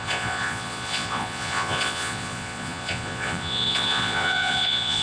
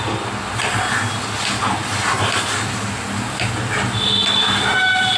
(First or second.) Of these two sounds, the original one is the second